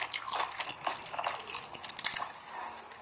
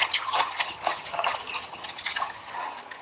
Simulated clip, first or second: second